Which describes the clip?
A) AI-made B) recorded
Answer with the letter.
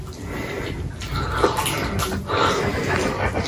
B